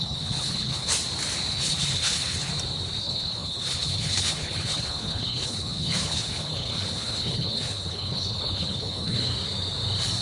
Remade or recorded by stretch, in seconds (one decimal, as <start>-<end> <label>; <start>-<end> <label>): 0.0-0.9 remade; 0.9-1.5 recorded; 1.5-2.5 remade; 2.5-3.0 recorded; 3.0-9.3 remade; 9.3-10.2 recorded